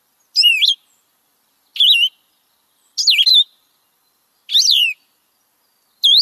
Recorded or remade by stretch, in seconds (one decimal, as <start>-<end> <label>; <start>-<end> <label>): 0.0-6.2 recorded